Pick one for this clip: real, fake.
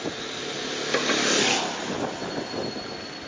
real